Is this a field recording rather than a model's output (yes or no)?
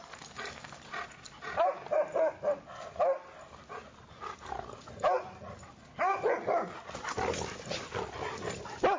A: yes